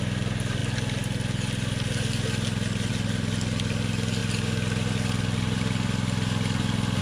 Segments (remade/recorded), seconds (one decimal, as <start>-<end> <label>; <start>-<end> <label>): 0.0-7.0 recorded